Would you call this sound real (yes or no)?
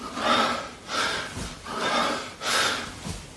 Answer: no